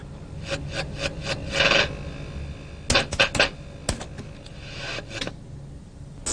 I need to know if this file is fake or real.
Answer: real